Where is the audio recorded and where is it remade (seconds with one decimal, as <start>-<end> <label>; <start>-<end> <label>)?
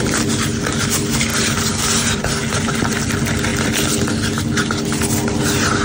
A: 0.0-5.8 recorded